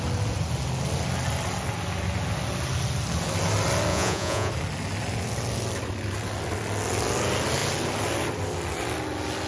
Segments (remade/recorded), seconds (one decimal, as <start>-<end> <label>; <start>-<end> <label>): 0.0-3.9 recorded; 3.9-4.5 remade; 4.5-9.5 recorded